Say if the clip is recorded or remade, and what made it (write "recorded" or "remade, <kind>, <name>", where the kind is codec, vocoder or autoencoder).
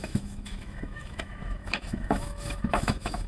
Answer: remade, autoencoder, DAC-VAE